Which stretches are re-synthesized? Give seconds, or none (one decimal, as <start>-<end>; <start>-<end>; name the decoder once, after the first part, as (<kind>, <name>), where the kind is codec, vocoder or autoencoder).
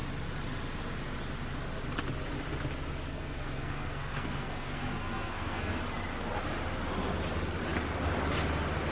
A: 3.1-5.8 (codec, SNAC)